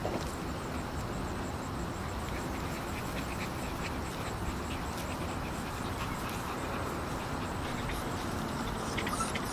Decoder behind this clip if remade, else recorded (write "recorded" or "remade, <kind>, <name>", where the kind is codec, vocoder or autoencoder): recorded